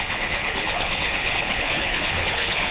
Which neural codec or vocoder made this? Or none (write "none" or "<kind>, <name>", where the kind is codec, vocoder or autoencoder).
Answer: codec, HILCodec